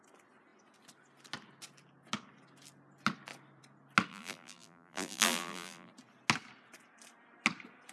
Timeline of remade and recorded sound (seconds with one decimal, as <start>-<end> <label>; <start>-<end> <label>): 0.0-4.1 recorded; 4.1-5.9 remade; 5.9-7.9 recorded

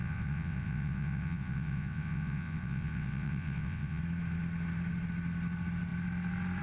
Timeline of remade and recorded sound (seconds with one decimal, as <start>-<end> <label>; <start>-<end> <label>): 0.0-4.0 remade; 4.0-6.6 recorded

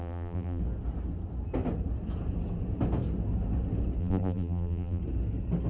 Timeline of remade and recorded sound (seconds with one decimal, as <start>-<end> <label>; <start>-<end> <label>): 0.0-0.6 remade; 0.6-4.0 recorded; 4.0-5.0 remade; 5.0-5.7 recorded

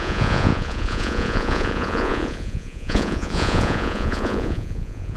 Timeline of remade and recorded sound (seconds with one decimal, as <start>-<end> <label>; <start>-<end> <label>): 0.0-5.2 remade

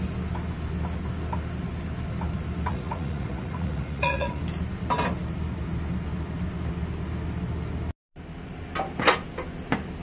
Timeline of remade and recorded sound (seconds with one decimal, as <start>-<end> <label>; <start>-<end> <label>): 0.0-2.7 recorded; 2.7-4.4 remade; 4.4-10.0 recorded

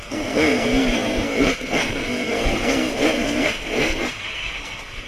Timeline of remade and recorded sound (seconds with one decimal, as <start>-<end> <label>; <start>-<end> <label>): 0.0-5.1 remade